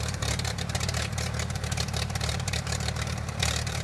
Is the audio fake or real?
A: fake